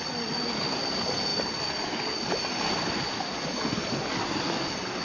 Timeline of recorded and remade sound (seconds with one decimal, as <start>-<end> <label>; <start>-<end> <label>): 0.0-5.0 recorded